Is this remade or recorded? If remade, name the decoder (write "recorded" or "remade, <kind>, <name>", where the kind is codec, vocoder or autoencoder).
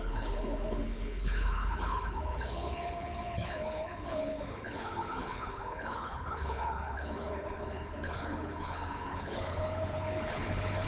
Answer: remade, codec, HILCodec